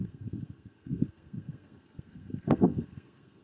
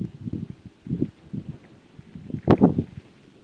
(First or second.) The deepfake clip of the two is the first